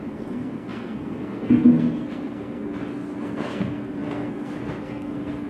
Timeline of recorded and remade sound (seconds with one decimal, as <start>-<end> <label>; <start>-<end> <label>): 0.0-5.5 remade